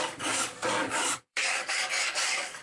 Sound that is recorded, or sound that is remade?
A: remade